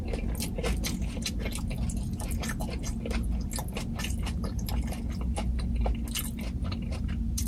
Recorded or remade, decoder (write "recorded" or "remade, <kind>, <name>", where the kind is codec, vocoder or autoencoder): recorded